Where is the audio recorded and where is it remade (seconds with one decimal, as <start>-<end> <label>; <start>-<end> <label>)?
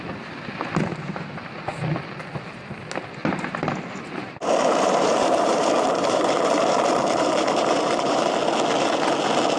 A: 0.0-3.2 recorded; 3.2-8.3 remade; 8.3-9.6 recorded